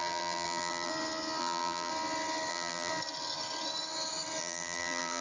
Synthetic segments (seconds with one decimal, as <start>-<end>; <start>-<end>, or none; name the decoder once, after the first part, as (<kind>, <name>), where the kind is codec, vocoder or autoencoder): 0.0-0.9 (vocoder, BigVGAN v2); 1.4-1.9; 2.5-2.9; 4.4-5.2